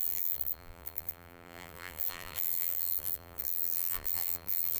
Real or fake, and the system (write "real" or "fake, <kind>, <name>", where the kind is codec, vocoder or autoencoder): fake, vocoder, BigVGAN v2